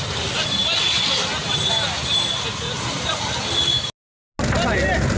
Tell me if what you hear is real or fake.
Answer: real